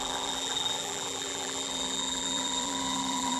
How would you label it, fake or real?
fake